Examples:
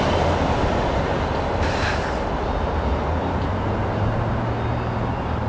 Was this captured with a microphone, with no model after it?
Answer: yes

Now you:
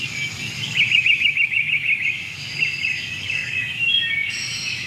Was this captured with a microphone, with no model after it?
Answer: no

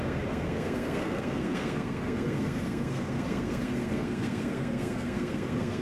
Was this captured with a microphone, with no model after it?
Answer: no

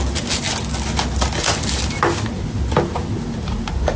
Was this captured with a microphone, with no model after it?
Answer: yes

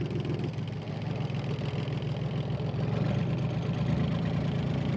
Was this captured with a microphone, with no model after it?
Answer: yes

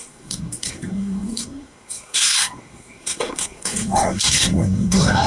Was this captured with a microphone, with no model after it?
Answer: no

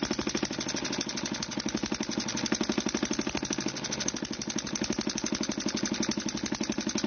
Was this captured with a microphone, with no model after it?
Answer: yes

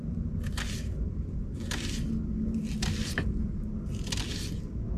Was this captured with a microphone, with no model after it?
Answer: yes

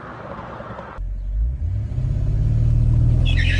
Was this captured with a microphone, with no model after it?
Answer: yes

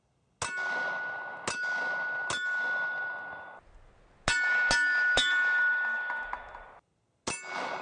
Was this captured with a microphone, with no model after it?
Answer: yes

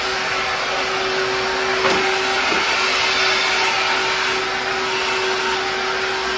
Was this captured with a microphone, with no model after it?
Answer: yes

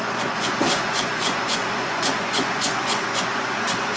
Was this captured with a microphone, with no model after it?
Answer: no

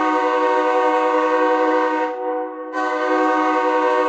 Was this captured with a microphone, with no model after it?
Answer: no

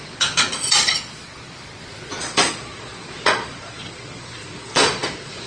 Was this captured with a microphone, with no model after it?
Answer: no